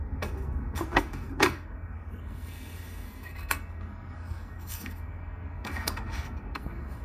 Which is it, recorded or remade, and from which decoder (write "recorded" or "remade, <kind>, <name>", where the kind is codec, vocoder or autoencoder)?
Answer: remade, codec, SNAC